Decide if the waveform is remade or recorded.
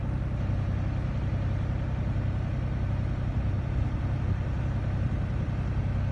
recorded